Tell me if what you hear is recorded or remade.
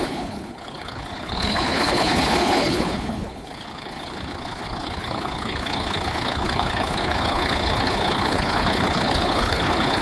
remade